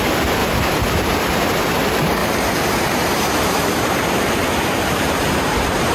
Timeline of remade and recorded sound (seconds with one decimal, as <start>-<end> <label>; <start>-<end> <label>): 0.0-0.4 recorded; 0.4-1.8 remade; 1.8-2.2 recorded; 2.2-5.9 remade